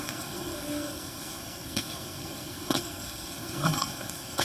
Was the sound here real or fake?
fake